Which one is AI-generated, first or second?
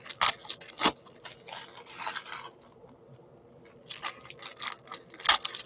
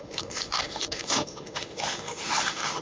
second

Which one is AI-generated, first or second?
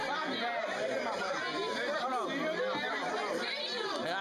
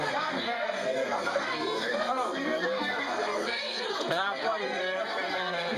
second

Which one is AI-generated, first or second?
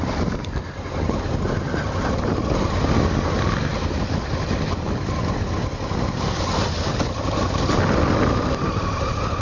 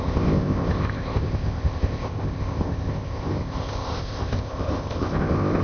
second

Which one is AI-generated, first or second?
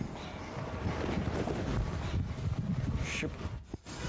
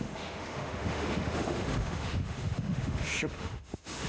second